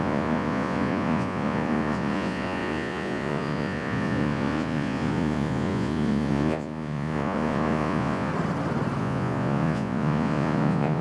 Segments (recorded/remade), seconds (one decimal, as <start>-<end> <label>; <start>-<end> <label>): 0.0-8.3 remade; 8.3-9.0 recorded; 9.0-11.0 remade